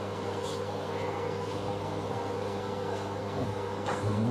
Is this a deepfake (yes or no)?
yes